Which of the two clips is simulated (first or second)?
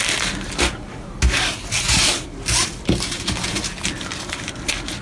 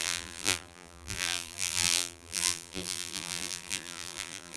second